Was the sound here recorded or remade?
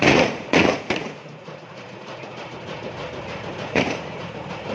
remade